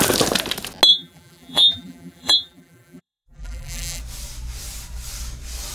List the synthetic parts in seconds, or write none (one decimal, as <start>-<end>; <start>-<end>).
0.9-4.0